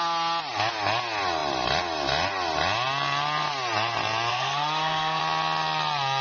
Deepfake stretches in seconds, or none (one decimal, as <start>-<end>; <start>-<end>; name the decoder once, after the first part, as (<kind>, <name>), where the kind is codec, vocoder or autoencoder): 4.3-5.2 (codec, SNAC)

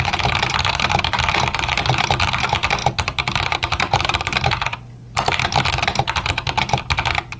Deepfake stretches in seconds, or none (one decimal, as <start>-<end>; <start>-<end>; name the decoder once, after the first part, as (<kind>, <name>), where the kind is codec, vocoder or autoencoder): none